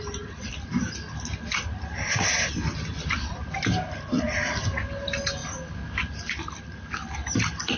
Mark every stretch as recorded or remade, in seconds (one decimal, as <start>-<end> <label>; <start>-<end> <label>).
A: 0.0-7.8 remade